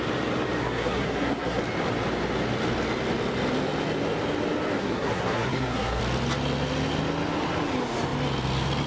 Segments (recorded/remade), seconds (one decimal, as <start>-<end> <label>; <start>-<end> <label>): 0.0-0.6 recorded; 0.6-1.6 remade; 1.6-4.8 recorded; 4.8-6.0 remade; 6.0-8.9 recorded